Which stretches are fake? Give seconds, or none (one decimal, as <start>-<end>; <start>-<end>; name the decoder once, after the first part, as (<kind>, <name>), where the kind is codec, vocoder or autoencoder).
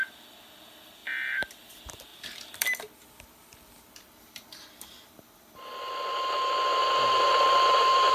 1.0-1.5 (vocoder, BigVGAN v2); 2.1-5.2; 6.8-8.1